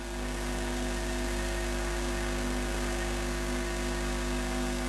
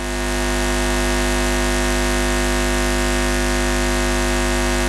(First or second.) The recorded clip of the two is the second